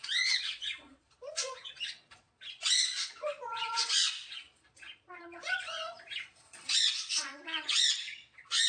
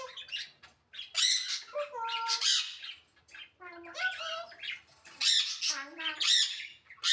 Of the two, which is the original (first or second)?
second